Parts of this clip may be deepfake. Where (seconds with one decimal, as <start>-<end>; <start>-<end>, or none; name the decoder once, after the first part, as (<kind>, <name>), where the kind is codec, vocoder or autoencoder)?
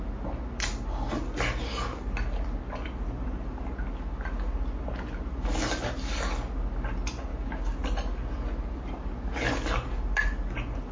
7.3-7.8 (codec, DAC)